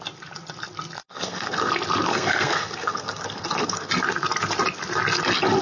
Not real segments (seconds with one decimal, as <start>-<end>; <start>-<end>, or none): 1.0-1.7; 2.1-3.9

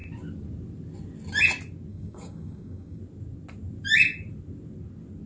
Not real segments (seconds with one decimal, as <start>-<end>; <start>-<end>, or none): 1.9-3.0